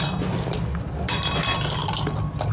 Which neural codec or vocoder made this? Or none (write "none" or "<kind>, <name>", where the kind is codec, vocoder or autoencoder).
none